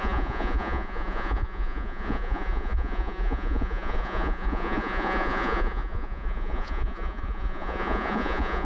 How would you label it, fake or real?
fake